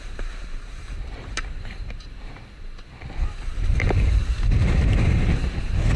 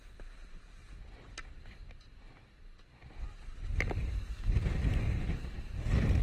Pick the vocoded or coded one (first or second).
first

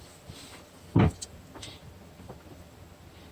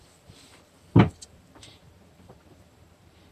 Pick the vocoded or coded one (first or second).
second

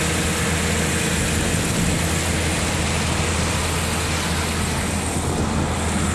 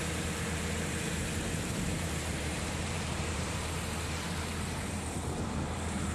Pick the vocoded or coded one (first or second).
second